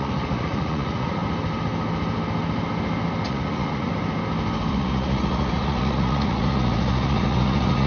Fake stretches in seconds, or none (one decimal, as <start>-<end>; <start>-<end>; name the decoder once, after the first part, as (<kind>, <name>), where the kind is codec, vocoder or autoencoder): 0.0-1.2 (vocoder, Vocos); 3.3-3.9; 4.7-7.9